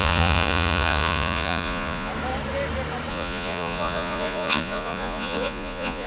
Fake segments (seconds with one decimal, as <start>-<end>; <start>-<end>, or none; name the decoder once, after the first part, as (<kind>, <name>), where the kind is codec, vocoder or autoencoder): 0.0-2.1 (vocoder, Vocos); 3.1-6.1